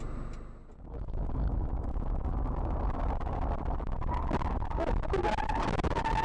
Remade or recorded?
recorded